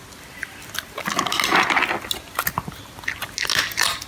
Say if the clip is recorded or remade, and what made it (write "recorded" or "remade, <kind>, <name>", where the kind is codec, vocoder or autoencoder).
recorded